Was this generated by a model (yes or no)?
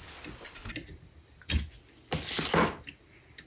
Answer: no